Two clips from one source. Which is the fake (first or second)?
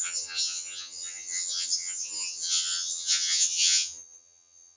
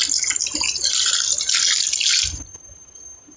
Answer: first